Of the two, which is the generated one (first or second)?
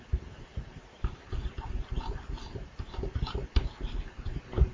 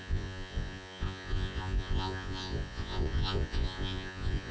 second